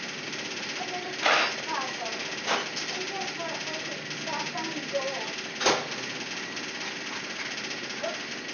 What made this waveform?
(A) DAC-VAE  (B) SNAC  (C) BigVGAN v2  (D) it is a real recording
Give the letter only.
D